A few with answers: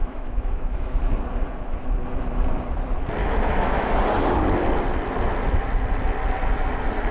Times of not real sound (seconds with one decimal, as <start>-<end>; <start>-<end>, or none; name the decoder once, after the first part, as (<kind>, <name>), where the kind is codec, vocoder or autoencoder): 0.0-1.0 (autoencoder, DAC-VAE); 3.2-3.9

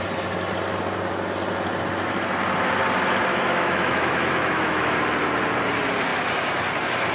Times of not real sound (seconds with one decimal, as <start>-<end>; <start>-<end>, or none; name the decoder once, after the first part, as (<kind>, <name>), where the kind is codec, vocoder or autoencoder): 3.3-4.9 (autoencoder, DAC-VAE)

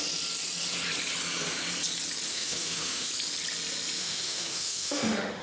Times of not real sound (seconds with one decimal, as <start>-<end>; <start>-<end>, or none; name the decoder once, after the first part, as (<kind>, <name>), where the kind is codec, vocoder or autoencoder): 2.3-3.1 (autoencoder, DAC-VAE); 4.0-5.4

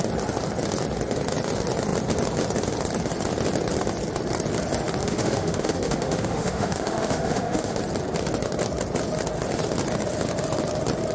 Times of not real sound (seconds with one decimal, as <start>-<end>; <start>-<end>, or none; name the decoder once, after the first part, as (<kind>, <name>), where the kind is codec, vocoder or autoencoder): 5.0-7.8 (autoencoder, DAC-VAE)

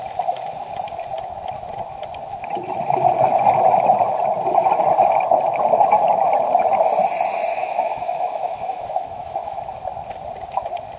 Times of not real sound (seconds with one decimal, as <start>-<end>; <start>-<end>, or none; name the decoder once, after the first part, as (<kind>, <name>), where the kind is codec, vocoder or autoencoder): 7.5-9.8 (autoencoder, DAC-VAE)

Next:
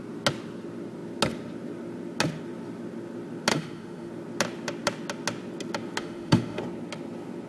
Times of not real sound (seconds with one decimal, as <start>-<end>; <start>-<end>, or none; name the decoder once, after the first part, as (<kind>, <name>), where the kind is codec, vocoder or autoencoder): 3.5-4.1 (autoencoder, DAC-VAE); 6.0-6.6

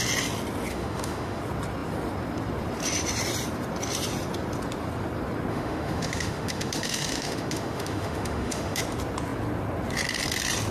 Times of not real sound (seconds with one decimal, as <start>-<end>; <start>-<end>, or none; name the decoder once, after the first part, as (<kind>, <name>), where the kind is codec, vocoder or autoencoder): 0.7-1.4 (autoencoder, DAC-VAE); 5.5-8.8

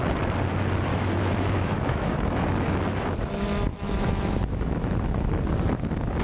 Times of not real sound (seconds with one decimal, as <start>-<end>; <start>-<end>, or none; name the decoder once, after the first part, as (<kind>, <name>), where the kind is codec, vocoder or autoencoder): 0.9-3.3 (autoencoder, DAC-VAE); 3.7-5.3